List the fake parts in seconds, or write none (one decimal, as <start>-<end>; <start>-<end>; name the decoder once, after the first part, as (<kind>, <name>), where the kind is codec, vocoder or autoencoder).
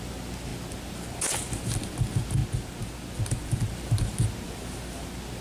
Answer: none